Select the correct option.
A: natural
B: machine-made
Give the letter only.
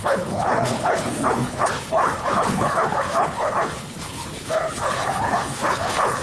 B